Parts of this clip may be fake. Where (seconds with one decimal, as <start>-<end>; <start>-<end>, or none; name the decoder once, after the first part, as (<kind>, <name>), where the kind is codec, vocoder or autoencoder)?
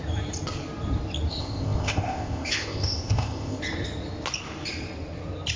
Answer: 1.3-3.6 (codec, ZipCodec)